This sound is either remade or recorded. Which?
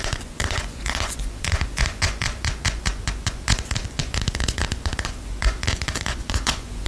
remade